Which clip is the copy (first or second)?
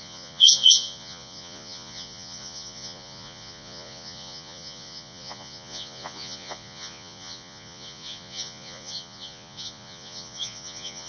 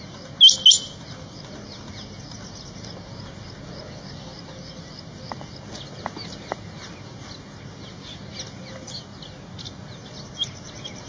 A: first